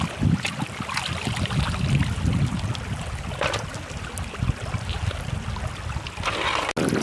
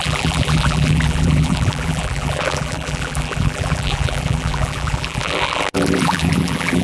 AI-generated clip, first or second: second